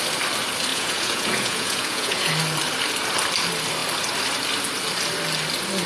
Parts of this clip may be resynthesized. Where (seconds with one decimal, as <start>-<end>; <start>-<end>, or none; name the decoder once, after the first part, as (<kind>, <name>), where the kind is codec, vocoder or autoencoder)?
0.7-2.3 (vocoder, Vocos)